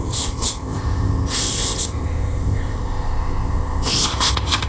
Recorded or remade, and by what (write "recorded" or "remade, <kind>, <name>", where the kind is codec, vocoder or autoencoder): remade, codec, ZipCodec